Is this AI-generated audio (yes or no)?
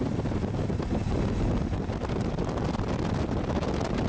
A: no